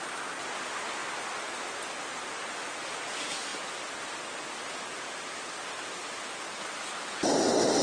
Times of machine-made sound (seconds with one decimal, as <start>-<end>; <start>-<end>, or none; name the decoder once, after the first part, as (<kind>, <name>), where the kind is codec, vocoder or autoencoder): none